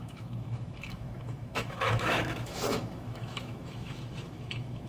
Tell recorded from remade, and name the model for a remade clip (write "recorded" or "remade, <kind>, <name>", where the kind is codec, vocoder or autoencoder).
remade, autoencoder, DAC-VAE